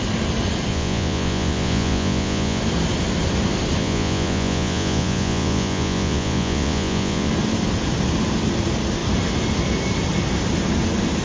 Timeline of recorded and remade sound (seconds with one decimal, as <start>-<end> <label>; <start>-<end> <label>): 0.0-0.7 recorded; 0.7-2.6 remade; 2.6-3.8 recorded; 3.8-7.3 remade; 7.3-11.2 recorded